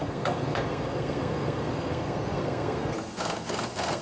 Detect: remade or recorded remade